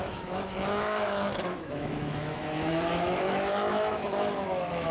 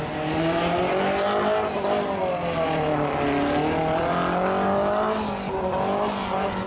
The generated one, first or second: first